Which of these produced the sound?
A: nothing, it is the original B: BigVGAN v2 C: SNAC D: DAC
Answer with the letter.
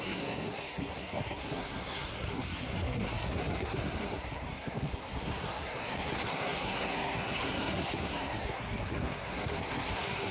C